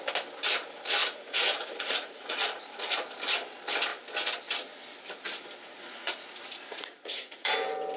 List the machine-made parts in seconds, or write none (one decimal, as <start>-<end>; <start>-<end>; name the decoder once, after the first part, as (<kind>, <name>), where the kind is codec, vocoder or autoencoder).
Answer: 1.0-3.1 (vocoder, Vocos); 5.6-7.5